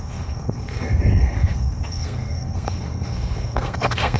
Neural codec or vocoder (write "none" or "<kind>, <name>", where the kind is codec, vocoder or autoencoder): codec, SNAC